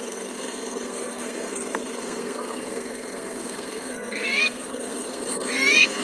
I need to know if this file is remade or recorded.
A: remade